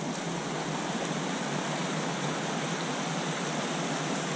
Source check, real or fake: real